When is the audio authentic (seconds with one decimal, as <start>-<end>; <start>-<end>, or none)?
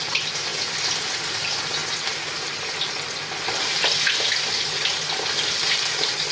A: 0.0-6.3